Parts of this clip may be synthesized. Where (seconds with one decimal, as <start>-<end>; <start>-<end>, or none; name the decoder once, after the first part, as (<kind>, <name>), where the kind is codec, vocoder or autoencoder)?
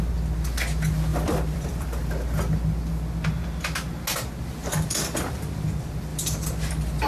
1.1-2.1 (vocoder, BigVGAN v2); 4.6-5.3; 6.1-7.1